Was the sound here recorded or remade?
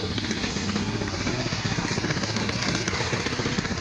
remade